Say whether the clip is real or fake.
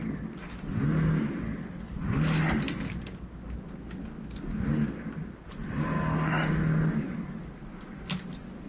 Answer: real